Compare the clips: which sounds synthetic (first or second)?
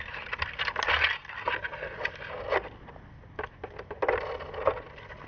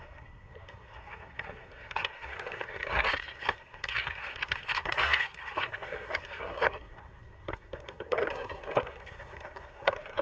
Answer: second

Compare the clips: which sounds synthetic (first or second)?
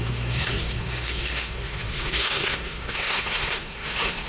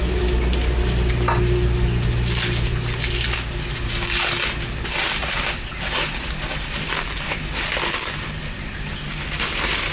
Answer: first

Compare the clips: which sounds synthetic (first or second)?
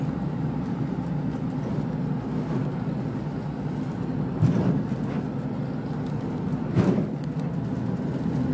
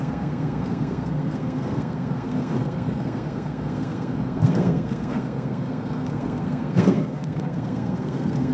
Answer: second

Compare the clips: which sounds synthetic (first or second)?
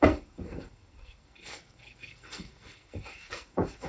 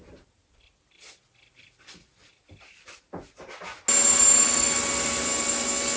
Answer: first